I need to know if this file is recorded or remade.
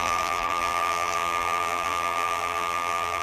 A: remade